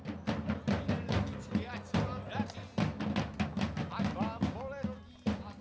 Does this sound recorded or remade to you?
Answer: recorded